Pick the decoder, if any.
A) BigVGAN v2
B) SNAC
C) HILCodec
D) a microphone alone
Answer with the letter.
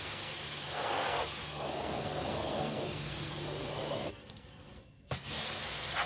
B